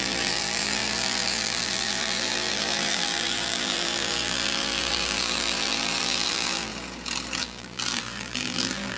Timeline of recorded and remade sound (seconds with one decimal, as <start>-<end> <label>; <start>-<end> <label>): 0.0-6.7 remade; 6.7-7.4 recorded; 7.4-9.0 remade